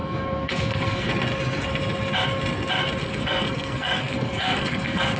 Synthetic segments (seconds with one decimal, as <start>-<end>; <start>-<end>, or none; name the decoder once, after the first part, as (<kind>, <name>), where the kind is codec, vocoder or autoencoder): 0.0-1.1 (codec, SNAC); 3.0-5.2